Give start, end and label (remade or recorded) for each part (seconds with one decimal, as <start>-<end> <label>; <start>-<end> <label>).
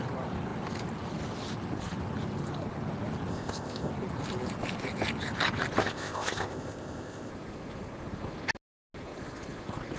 0.0-3.3 recorded; 3.3-3.9 remade; 3.9-5.8 recorded; 5.8-7.3 remade; 7.3-10.0 recorded